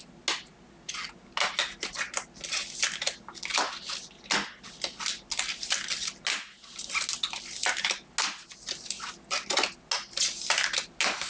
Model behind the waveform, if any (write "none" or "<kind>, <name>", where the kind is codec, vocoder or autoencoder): none